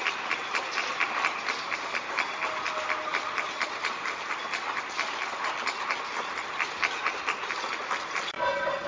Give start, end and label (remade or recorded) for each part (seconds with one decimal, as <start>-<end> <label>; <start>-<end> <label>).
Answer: 0.0-8.9 recorded